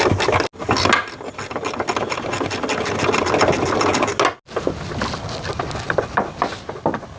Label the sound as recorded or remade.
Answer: recorded